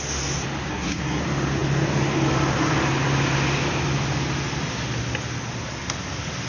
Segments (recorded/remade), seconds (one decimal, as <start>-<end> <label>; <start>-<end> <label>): 0.0-0.7 recorded; 0.7-1.2 remade; 1.2-6.5 recorded